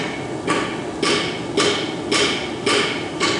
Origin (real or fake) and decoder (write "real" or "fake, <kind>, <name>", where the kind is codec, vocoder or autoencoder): real